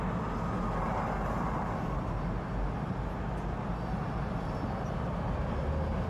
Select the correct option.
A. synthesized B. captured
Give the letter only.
B